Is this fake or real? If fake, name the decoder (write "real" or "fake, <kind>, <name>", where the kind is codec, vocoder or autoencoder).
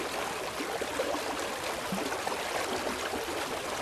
real